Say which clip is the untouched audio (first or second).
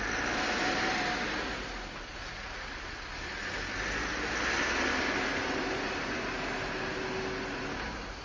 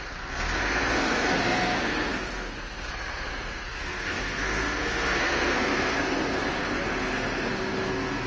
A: first